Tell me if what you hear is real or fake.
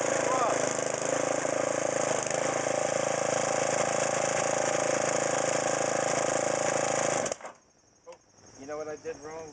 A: real